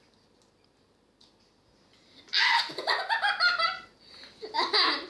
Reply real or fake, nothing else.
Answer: real